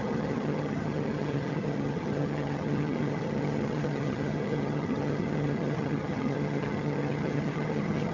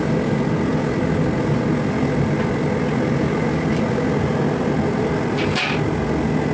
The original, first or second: second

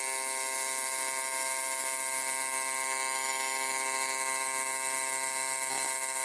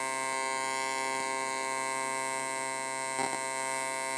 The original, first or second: second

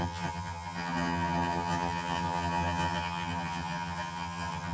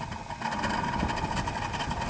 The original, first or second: second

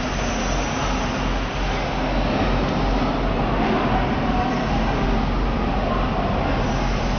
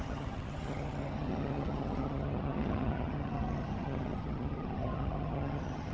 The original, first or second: first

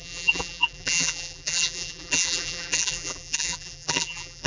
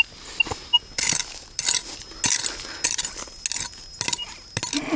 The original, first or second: second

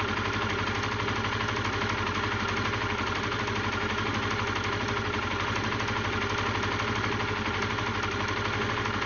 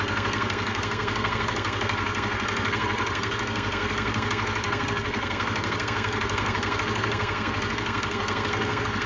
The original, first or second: first